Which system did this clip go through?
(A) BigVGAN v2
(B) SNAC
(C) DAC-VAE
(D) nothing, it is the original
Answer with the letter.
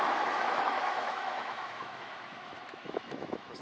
C